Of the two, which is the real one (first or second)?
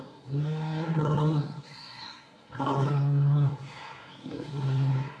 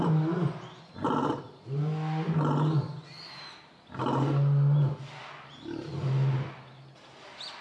second